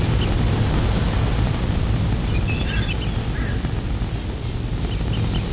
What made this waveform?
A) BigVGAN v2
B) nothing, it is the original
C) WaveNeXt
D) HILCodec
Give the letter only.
B